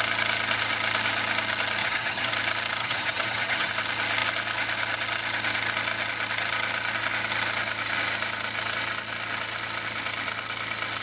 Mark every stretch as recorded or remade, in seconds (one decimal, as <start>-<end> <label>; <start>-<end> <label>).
0.0-1.8 recorded; 1.8-2.3 remade; 2.3-2.8 recorded; 2.8-3.7 remade; 3.7-11.0 recorded